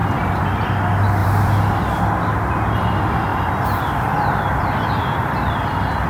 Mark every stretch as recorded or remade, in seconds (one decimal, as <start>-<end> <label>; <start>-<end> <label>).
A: 0.0-0.7 remade; 0.7-1.2 recorded; 1.2-1.8 remade; 1.8-3.3 recorded; 3.3-5.5 remade; 5.5-6.1 recorded